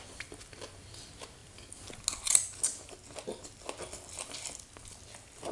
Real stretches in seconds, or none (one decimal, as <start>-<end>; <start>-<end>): 0.0-5.5